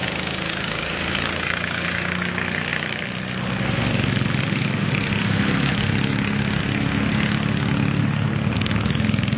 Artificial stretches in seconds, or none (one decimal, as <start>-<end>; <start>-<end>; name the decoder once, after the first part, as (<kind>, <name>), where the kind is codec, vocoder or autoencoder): 0.0-2.3 (codec, DAC)